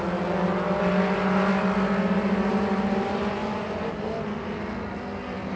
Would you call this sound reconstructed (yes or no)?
no